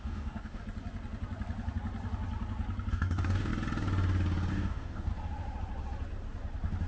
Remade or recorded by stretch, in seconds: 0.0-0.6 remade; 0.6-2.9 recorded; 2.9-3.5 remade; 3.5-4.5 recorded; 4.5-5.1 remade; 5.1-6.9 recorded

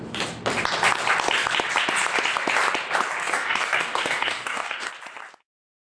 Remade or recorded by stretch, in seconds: 0.0-3.2 recorded; 3.2-4.9 remade; 4.9-5.8 recorded